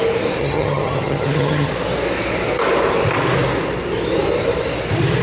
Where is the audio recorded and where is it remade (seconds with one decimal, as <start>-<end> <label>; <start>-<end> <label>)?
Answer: 0.0-0.4 recorded; 0.4-1.7 remade; 1.7-5.2 recorded